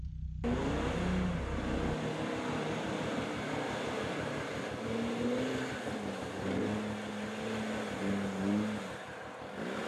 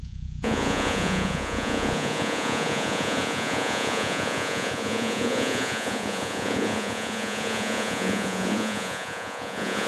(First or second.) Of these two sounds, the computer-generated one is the second